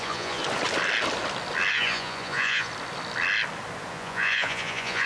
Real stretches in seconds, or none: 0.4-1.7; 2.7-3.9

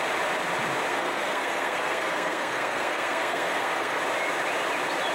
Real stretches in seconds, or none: 0.0-0.9; 4.0-5.1

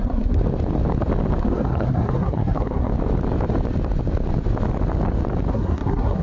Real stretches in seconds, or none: 0.4-1.4; 2.9-5.5

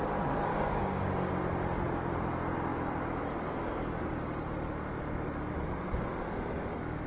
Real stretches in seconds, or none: 0.0-0.5; 1.3-7.1

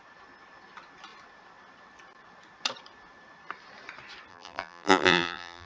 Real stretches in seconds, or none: 0.0-4.3